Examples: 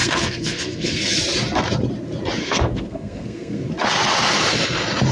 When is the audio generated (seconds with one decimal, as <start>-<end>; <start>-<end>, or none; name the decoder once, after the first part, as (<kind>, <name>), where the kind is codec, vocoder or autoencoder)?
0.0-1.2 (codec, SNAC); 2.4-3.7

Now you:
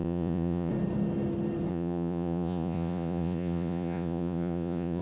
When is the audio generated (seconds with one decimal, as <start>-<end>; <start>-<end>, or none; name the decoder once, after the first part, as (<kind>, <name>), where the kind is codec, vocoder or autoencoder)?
0.0-0.7 (vocoder, Vocos); 1.7-5.0

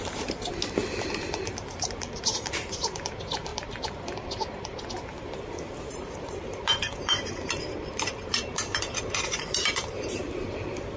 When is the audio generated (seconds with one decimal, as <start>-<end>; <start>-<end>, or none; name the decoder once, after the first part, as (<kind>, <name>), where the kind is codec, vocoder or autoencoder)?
0.0-0.5 (vocoder, BigVGAN v2); 1.3-11.0

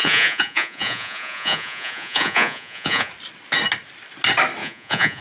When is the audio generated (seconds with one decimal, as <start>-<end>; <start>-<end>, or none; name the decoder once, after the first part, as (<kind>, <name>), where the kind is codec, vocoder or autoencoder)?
0.0-3.1 (vocoder, Vocos); 4.6-5.2

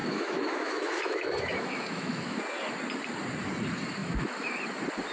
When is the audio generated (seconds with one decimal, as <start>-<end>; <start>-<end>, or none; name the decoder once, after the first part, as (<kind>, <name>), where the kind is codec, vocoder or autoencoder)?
0.0-2.4 (autoencoder, DAC-VAE); 4.0-4.6

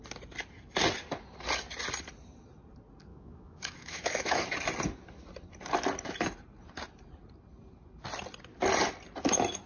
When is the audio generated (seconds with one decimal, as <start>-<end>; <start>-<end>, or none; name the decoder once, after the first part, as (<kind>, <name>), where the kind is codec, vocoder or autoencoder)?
3.1-4.4 (autoencoder, DAC-VAE)

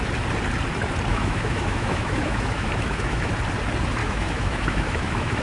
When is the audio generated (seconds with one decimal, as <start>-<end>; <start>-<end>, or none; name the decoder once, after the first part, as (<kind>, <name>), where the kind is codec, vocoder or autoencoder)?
1.1-3.3 (autoencoder, DAC-VAE); 4.0-5.4